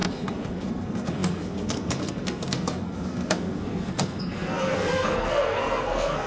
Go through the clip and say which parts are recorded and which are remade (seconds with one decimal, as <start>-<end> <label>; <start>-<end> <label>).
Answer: 0.0-6.3 remade